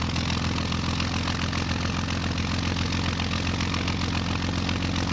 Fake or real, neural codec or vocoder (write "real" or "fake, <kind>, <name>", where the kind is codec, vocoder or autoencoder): real